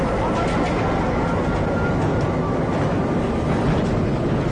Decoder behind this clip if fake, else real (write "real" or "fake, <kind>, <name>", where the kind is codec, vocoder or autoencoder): real